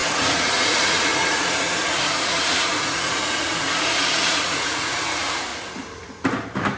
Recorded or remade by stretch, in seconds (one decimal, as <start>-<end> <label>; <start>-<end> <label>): 0.0-5.5 remade; 5.5-6.8 recorded